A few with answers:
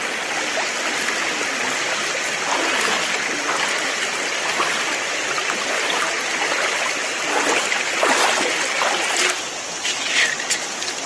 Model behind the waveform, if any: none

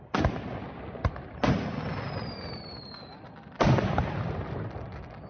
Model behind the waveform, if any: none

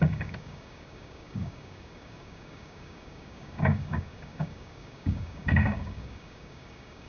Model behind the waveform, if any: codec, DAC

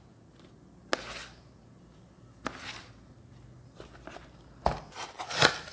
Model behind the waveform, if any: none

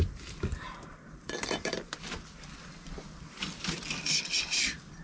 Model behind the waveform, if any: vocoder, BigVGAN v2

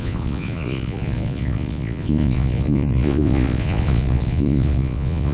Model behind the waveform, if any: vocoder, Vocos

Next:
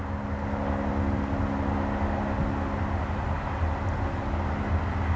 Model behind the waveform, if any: none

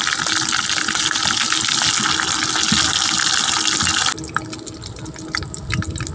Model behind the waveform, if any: none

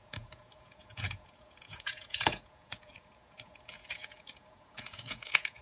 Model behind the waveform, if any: vocoder, Vocos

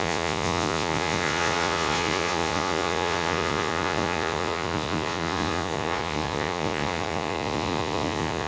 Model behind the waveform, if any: vocoder, Vocos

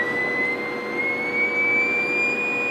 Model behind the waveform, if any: none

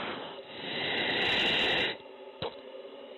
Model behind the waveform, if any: none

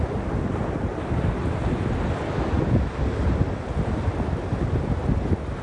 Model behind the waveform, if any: none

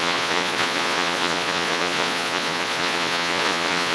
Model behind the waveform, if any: vocoder, Vocos